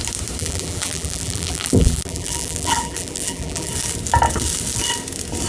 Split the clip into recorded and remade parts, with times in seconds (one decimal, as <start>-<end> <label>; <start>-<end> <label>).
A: 0.0-0.4 recorded; 0.4-3.7 remade; 3.7-5.5 recorded